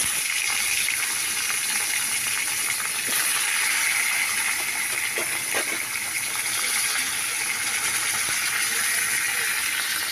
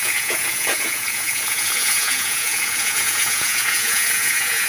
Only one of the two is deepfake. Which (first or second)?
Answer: second